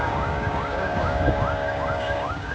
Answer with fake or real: fake